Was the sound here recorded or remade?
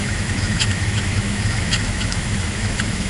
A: remade